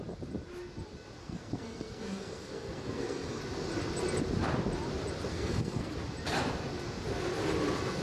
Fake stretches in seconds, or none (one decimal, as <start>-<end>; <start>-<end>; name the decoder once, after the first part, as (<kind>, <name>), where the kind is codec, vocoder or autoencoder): 1.2-3.4 (codec, SNAC); 5.3-5.9

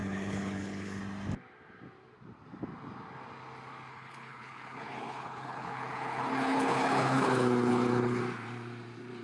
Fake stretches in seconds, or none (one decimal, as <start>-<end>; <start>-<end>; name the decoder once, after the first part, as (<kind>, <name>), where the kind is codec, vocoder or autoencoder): 0.0-1.0 (codec, HILCodec); 3.9-8.2

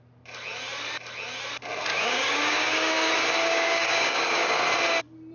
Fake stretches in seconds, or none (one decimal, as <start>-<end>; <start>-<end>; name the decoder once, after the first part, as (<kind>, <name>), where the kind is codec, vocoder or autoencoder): 1.9-3.1 (codec, DAC); 3.5-4.6

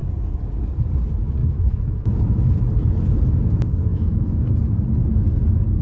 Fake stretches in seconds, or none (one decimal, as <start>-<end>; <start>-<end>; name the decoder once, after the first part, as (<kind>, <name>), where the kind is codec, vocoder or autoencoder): 1.4-2.4 (autoencoder, DAC-VAE); 3.9-4.5